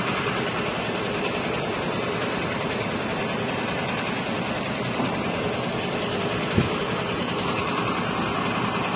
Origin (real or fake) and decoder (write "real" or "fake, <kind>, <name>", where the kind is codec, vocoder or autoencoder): real